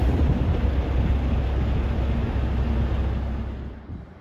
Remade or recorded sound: recorded